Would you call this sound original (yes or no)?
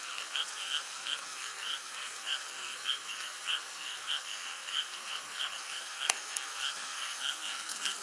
no